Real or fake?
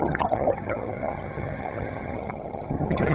fake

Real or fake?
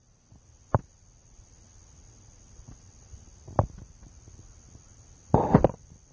real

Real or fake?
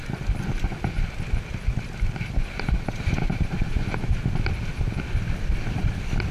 real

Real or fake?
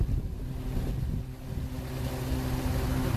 real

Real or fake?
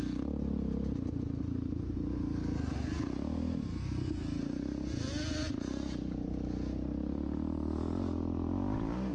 real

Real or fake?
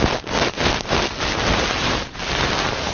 real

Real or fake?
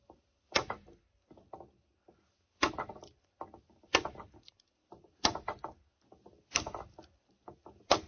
real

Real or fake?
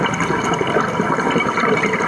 real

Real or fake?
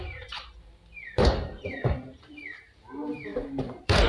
fake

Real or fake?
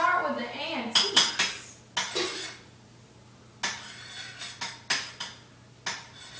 real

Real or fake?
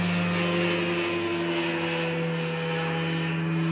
real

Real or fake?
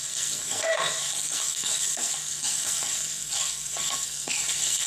fake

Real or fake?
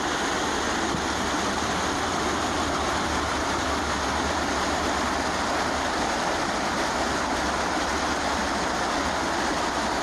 real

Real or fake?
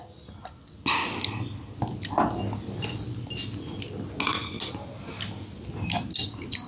real